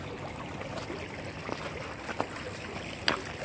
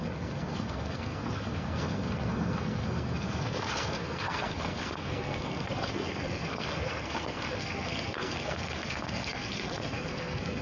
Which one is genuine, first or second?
first